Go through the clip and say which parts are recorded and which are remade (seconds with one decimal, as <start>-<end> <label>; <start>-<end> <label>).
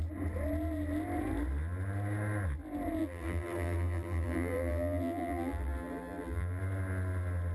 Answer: 0.0-3.0 recorded; 3.0-6.6 remade; 6.6-7.5 recorded